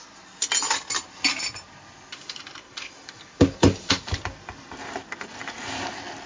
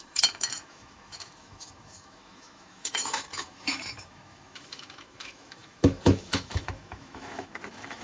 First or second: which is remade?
second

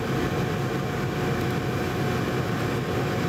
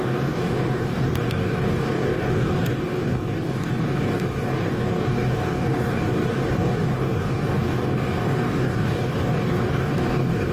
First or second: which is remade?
second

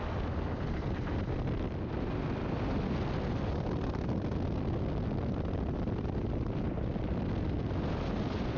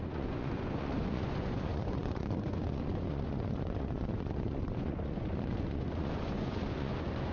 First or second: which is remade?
second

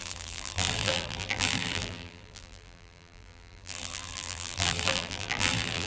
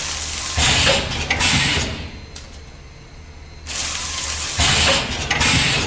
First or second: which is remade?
first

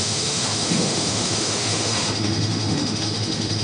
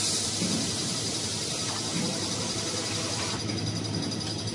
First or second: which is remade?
first